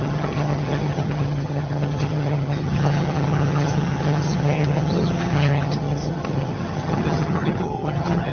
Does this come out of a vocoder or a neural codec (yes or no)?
yes